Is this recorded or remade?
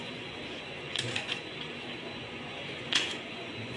remade